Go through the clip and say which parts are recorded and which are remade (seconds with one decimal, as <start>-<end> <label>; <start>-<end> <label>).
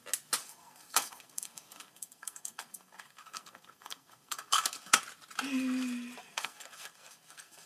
0.0-0.4 recorded; 0.4-5.0 remade; 5.0-6.2 recorded; 6.2-7.7 remade